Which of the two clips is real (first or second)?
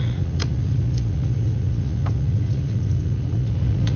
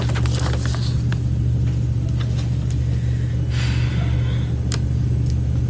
second